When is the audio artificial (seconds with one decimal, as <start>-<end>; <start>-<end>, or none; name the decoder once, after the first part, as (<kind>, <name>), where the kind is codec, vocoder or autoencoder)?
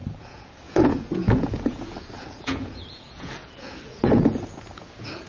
0.0-5.3 (vocoder, Vocos)